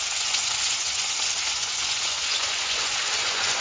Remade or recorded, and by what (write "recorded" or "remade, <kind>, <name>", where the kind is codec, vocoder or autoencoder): remade, vocoder, Vocos